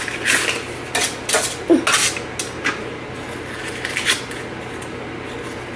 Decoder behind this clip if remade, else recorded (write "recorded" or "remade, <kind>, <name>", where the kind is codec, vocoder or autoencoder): recorded